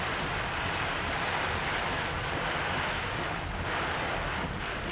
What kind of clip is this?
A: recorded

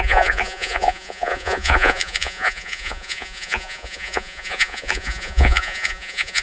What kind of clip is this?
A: remade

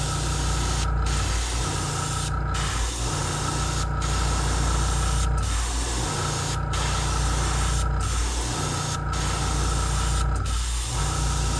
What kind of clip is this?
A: recorded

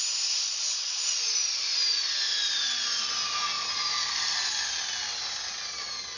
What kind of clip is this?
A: recorded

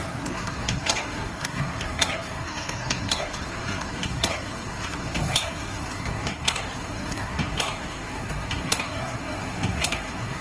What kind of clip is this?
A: remade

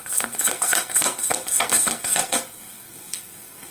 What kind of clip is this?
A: remade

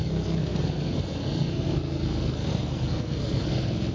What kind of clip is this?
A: remade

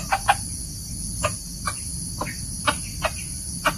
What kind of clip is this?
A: recorded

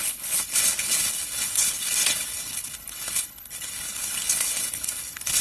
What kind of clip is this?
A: remade